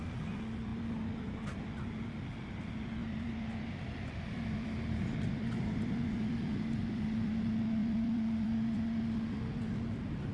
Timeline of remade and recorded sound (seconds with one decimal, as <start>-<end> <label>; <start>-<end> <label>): 0.0-0.7 recorded; 0.7-2.1 remade; 2.1-3.0 recorded; 3.0-6.8 remade; 6.8-7.8 recorded; 7.8-9.0 remade; 9.0-10.3 recorded